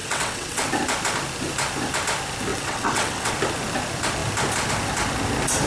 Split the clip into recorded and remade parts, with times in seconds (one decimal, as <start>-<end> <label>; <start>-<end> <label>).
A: 0.0-0.7 remade; 0.7-2.5 recorded; 2.5-3.3 remade; 3.3-5.7 recorded